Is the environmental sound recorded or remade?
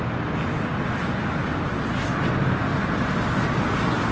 recorded